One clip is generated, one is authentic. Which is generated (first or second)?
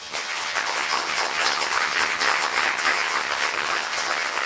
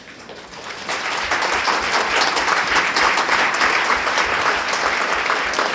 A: first